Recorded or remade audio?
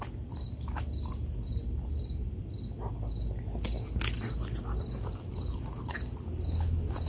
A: recorded